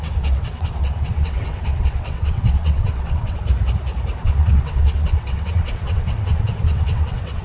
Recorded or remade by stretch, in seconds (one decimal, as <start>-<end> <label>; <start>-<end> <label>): 0.0-3.4 remade; 3.4-4.2 recorded; 4.2-7.4 remade